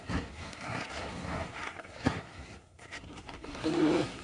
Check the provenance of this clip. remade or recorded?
remade